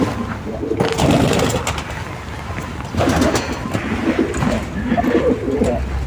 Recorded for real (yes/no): yes